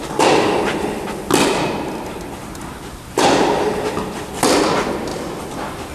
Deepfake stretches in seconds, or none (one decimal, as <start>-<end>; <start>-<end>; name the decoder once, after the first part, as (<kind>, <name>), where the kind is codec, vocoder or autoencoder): 5.1-5.9 (vocoder, BigVGAN v2)